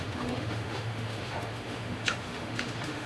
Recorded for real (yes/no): no